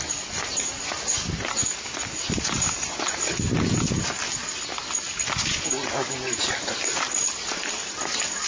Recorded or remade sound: recorded